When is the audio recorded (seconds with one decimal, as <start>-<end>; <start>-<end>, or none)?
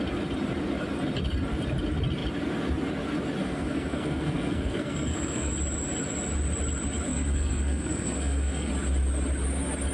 0.0-3.4; 5.5-7.1; 8.7-9.9